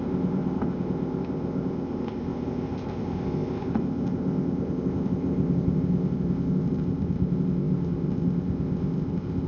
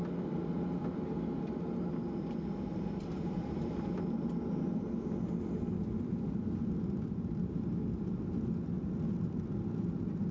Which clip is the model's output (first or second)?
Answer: first